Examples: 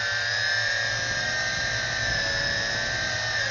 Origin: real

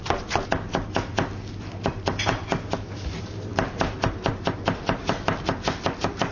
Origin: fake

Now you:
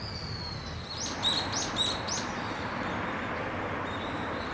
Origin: real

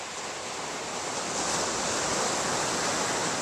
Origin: real